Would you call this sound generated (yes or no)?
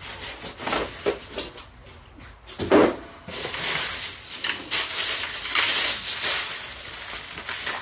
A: no